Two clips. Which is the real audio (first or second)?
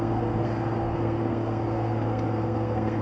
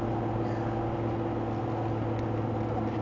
second